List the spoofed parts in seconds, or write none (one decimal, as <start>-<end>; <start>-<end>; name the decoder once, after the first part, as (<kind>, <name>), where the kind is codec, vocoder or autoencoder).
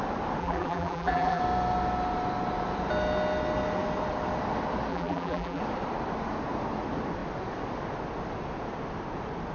0.4-1.4 (vocoder, BigVGAN v2); 4.9-5.6